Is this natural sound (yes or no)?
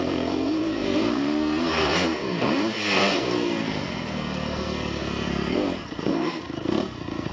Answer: no